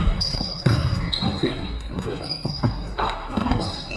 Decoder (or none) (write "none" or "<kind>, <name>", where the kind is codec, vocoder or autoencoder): codec, SNAC